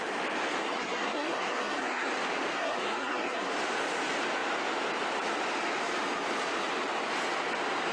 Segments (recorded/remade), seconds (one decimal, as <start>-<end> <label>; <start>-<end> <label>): 0.0-0.6 recorded; 0.6-2.1 remade; 2.1-2.5 recorded; 2.5-3.5 remade; 3.5-7.9 recorded